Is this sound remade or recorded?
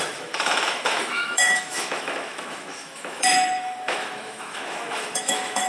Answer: remade